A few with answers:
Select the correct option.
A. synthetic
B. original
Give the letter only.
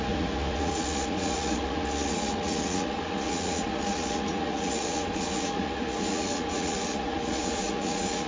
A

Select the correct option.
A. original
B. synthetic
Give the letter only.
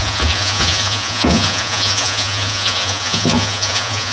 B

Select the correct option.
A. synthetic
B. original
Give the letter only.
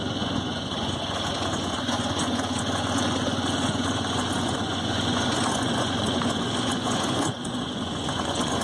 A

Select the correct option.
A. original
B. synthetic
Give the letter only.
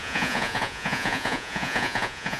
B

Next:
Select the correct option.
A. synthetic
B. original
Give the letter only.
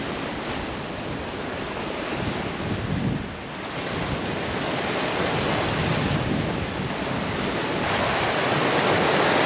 B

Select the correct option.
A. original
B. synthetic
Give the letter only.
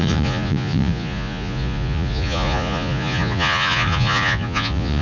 B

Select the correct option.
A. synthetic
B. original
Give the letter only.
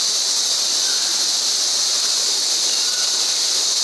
B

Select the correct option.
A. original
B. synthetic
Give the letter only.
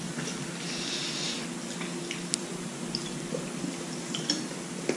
A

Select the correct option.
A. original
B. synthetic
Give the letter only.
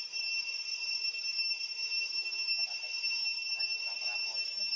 A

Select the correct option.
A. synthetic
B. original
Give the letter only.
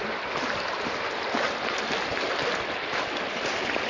B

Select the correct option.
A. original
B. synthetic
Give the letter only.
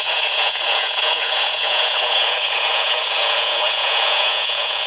B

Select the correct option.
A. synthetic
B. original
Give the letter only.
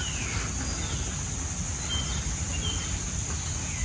B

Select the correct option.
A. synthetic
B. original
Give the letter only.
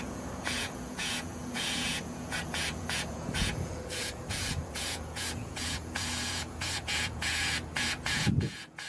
A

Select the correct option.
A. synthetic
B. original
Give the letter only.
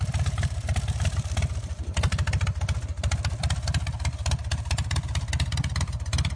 B